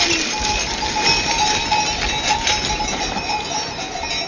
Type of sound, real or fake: real